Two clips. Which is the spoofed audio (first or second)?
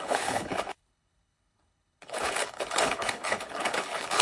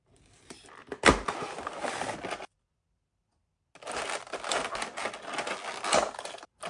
first